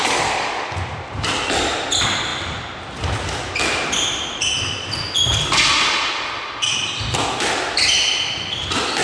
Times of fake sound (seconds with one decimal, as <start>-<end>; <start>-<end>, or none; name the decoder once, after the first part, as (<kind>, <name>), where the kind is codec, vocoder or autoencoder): 0.0-0.7 (codec, DAC)